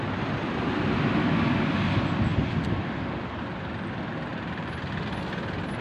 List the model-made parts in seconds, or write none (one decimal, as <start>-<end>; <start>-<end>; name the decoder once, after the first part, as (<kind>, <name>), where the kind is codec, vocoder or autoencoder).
4.3-4.8 (vocoder, BigVGAN v2)